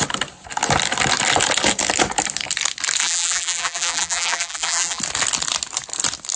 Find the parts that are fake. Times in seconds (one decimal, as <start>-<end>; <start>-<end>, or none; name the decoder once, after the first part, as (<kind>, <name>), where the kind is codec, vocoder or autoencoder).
3.0-5.0 (vocoder, BigVGAN v2)